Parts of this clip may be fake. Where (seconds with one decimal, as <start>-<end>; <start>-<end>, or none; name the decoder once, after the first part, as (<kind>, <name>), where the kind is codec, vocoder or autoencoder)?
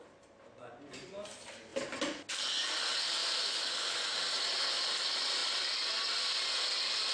3.2-4.2 (vocoder, Vocos)